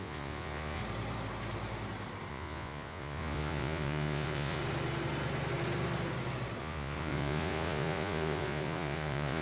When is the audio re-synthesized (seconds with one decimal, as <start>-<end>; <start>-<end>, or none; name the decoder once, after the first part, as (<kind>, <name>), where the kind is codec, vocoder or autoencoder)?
0.0-0.8 (vocoder, Vocos); 2.3-4.6; 6.6-9.4